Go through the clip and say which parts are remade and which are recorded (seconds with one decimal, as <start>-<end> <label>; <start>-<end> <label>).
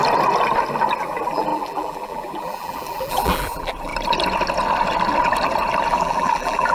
0.0-1.0 recorded; 1.0-3.9 remade; 3.9-5.9 recorded; 5.9-6.7 remade